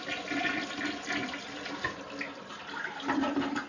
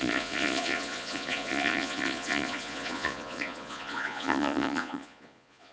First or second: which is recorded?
first